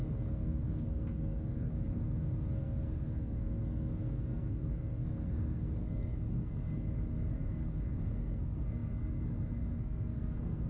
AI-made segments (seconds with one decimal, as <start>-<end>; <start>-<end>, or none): 0.0-10.7